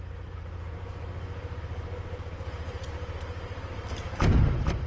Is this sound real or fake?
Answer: fake